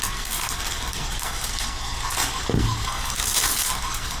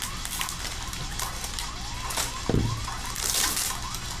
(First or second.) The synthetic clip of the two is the first